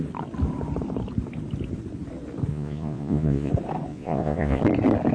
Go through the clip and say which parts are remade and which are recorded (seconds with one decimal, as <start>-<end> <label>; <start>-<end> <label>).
0.0-2.5 recorded; 2.5-3.5 remade; 3.5-3.9 recorded; 3.9-4.6 remade; 4.6-5.1 recorded